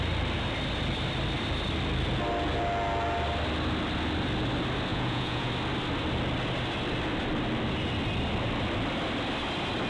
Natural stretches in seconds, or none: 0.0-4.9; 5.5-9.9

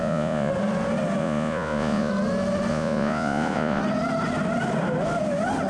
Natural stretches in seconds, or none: 0.5-1.2; 2.1-2.7; 3.8-5.7

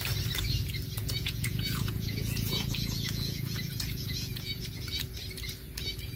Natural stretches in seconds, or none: 0.0-1.0; 4.7-6.2

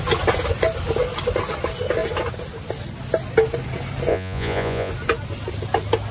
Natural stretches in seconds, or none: 0.0-4.1; 4.9-6.1

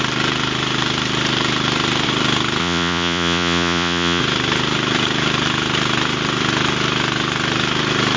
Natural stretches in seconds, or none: 0.0-2.6; 4.2-8.2